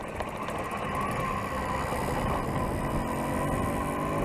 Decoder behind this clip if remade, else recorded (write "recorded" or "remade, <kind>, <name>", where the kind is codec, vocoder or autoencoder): recorded